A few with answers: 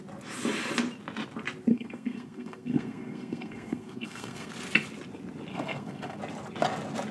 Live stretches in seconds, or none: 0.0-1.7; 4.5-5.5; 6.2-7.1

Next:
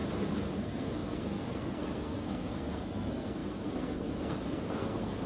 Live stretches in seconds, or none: 0.0-0.5

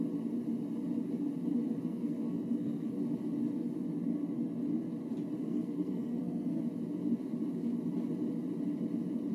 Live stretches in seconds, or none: 0.0-1.8; 2.9-5.4; 6.6-9.3

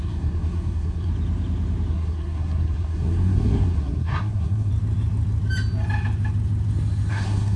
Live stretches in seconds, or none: 1.1-1.9; 4.7-7.1